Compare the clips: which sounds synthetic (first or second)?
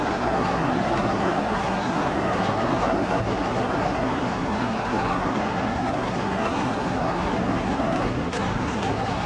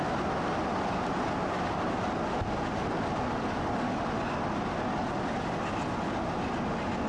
first